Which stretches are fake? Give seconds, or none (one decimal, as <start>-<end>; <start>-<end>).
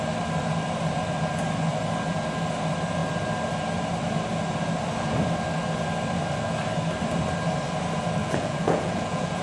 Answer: 8.2-9.4